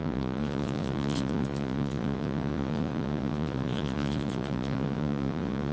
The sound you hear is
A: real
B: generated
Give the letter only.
B